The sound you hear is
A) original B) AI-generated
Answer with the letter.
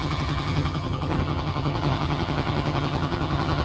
B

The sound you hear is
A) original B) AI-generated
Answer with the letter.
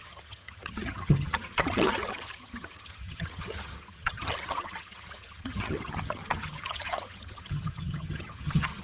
B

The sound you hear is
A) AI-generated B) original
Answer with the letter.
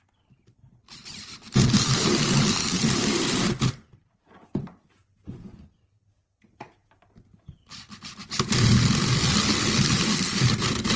B